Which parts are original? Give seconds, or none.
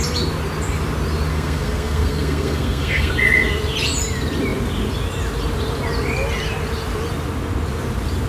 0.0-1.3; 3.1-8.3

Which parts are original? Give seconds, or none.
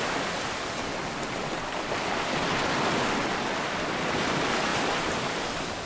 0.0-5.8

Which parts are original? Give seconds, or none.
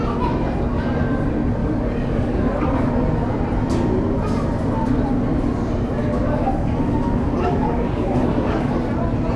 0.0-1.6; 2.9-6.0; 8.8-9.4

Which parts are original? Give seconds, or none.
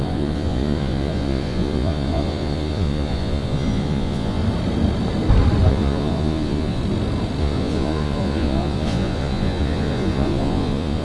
4.4-5.7; 6.8-7.4